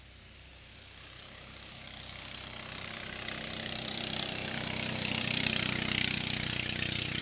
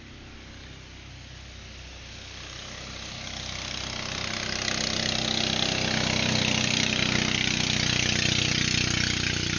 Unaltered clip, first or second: second